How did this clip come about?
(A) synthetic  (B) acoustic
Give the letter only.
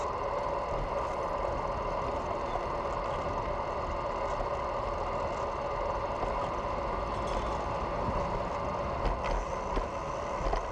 B